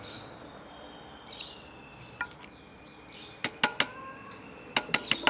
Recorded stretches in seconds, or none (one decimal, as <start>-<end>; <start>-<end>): 0.0-5.3